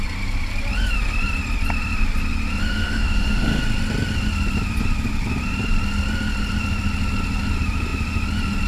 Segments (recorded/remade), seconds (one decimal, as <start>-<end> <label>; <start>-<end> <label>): 0.0-2.7 recorded; 2.7-3.6 remade; 3.6-8.7 recorded